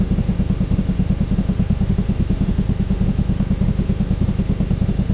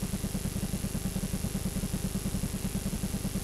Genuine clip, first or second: second